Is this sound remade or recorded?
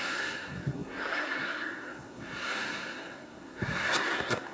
remade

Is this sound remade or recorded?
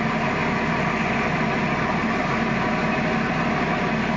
recorded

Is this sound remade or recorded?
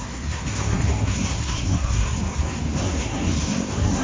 remade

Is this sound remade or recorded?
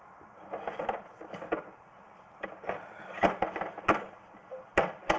recorded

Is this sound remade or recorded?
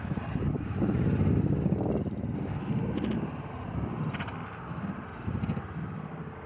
recorded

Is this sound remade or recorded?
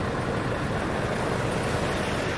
recorded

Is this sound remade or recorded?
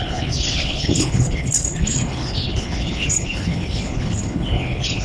remade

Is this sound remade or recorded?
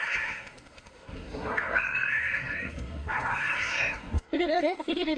remade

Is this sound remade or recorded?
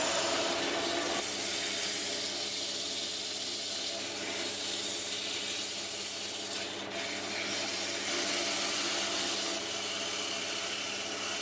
recorded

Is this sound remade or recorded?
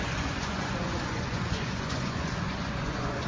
remade